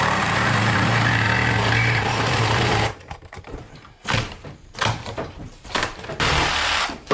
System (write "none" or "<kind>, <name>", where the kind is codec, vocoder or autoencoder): vocoder, BigVGAN v2